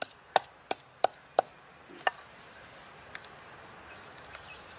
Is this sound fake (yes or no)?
no